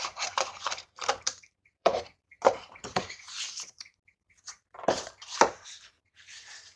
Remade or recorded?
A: remade